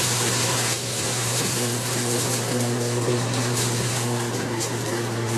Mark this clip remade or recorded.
remade